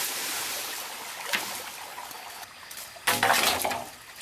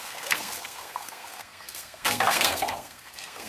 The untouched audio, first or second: first